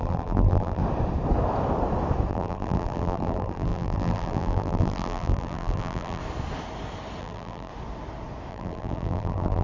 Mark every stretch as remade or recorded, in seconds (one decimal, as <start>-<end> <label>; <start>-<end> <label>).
0.0-0.8 remade; 0.8-2.3 recorded; 2.3-6.2 remade; 6.2-7.2 recorded; 7.2-7.7 remade; 7.7-8.5 recorded; 8.5-9.6 remade